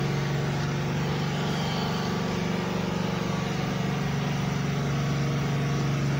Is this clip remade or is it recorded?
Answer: recorded